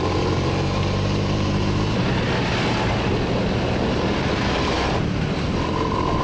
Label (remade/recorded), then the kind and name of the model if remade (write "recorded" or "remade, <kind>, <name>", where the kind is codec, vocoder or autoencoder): remade, vocoder, BigVGAN v2